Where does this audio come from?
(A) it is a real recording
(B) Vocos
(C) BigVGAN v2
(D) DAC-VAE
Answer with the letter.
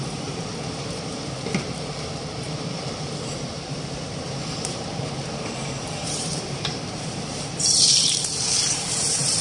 C